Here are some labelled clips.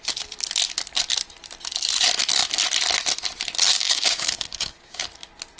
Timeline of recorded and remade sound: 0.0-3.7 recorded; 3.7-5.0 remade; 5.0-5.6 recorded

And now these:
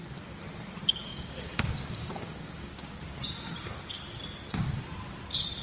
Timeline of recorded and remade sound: 0.0-1.0 recorded; 1.0-3.0 remade; 3.0-5.6 recorded

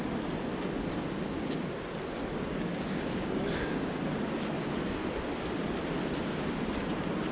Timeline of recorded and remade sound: 0.0-2.2 recorded; 2.2-4.2 remade; 4.2-7.3 recorded

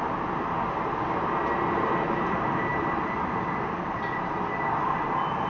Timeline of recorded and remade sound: 0.0-5.5 recorded

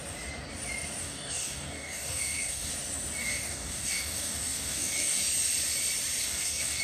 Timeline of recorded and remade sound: 0.0-1.0 recorded; 1.0-2.7 remade; 2.7-3.2 recorded; 3.2-5.2 remade; 5.2-6.2 recorded; 6.2-6.8 remade

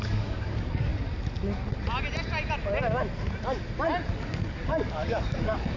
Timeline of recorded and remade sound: 0.0-0.9 remade; 0.9-4.1 recorded; 4.1-5.8 remade